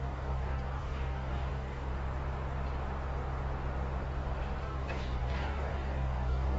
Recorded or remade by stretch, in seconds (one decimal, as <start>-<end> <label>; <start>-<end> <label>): 0.0-1.9 remade; 1.9-4.6 recorded; 4.6-6.6 remade

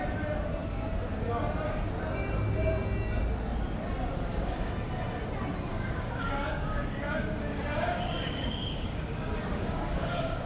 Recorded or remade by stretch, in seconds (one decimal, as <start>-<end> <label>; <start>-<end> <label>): 0.0-4.1 recorded; 4.1-4.7 remade; 4.7-5.7 recorded; 5.7-10.5 remade